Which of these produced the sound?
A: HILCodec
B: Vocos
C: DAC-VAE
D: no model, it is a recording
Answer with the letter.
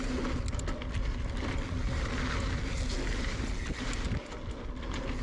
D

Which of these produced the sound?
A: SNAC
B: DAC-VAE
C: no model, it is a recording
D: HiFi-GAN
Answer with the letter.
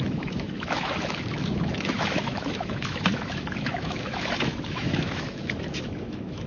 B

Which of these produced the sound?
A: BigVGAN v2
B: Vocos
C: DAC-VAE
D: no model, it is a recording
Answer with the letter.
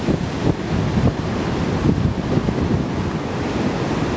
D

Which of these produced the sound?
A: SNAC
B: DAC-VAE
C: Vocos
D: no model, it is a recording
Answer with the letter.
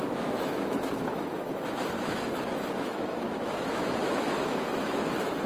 B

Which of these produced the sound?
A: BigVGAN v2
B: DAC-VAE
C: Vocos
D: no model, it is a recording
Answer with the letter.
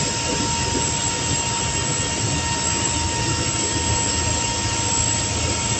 D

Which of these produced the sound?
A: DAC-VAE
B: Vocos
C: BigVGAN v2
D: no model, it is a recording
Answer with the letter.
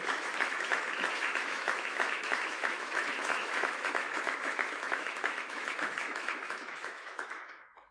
A